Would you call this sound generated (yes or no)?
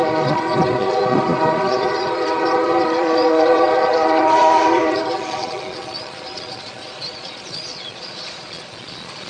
yes